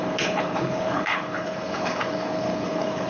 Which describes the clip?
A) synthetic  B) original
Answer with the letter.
A